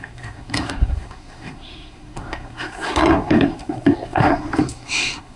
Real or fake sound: fake